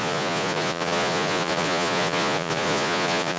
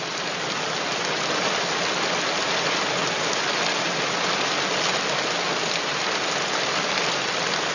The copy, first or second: first